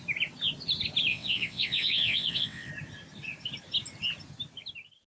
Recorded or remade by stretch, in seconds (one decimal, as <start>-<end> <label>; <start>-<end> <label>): 0.0-1.1 recorded; 1.1-2.7 remade; 2.7-5.1 recorded